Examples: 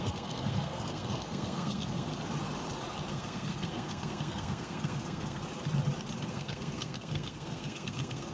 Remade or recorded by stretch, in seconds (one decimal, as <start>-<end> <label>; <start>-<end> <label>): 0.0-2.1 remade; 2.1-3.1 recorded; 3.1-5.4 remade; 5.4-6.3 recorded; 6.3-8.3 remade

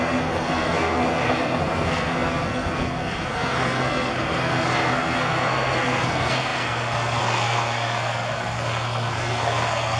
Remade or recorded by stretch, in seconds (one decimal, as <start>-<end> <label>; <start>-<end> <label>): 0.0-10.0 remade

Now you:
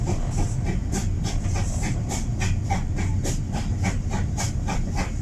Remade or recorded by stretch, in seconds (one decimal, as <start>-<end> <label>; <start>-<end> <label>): 0.0-5.2 recorded

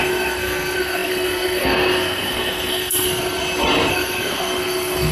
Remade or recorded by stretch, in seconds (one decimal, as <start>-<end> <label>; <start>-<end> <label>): 0.0-3.4 remade; 3.4-3.9 recorded; 3.9-5.1 remade